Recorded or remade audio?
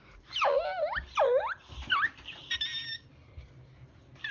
recorded